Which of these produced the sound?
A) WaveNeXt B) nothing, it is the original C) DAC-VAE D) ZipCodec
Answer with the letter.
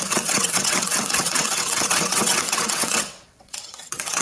A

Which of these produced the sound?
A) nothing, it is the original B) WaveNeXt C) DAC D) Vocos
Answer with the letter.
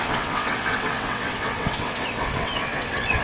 B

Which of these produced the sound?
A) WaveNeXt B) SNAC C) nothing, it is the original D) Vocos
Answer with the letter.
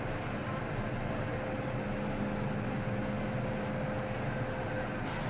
C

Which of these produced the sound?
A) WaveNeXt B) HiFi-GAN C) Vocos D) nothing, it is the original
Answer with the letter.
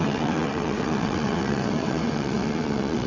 A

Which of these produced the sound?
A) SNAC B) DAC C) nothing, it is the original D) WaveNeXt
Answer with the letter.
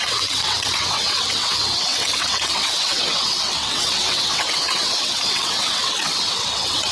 D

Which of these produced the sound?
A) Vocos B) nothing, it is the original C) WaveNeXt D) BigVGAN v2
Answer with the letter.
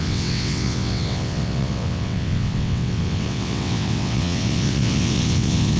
C